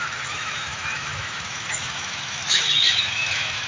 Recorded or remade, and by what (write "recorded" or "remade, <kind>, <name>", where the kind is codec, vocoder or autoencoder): remade, autoencoder, DAC-VAE